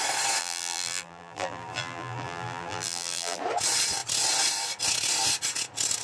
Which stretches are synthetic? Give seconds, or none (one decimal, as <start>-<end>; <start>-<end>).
0.4-3.4